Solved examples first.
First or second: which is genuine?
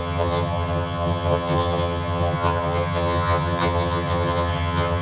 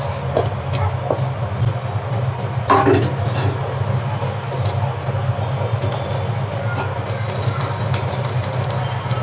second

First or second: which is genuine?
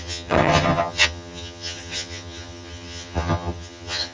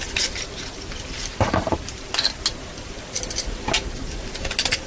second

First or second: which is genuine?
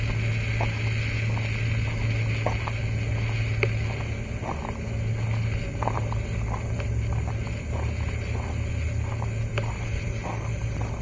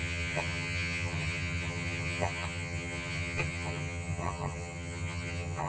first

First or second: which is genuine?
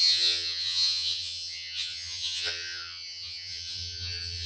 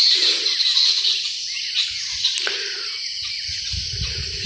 second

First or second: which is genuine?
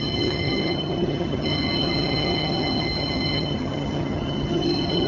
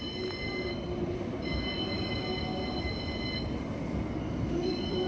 second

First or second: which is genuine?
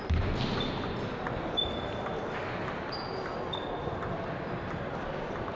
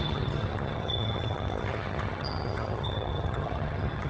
first